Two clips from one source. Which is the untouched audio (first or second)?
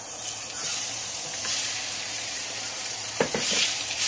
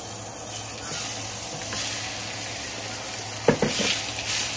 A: second